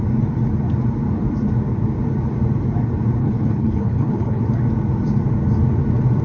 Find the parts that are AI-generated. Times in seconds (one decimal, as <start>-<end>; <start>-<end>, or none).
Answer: 3.2-4.4